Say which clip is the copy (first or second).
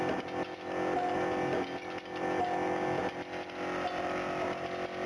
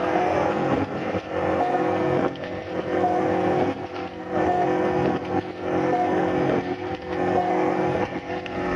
second